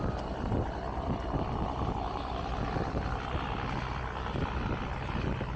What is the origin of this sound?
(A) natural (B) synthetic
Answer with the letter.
A